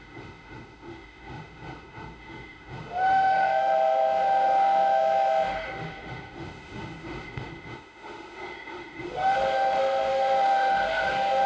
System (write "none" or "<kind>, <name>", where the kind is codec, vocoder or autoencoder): autoencoder, DAC-VAE